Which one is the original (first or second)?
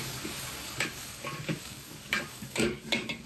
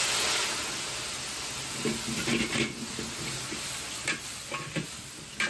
second